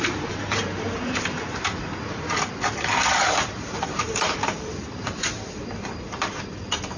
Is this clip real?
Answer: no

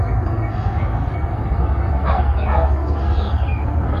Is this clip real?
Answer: no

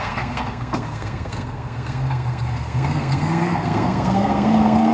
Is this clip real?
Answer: no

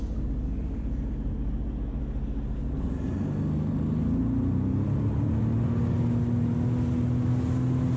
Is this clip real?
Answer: yes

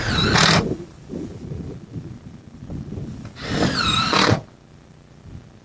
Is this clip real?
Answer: yes